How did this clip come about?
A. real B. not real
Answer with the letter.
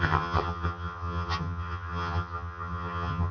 B